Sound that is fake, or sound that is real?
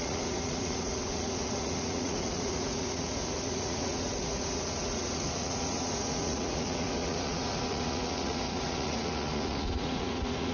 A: fake